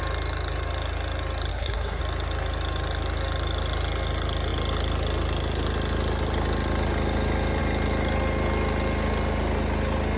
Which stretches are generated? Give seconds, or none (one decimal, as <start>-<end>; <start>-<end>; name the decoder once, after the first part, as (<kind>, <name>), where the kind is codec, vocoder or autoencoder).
1.5-2.0 (codec, SNAC)